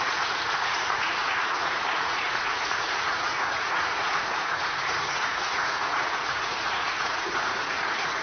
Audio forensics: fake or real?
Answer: fake